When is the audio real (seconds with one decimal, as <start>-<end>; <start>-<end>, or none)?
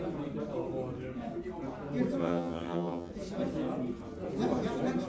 0.0-2.2; 3.1-5.1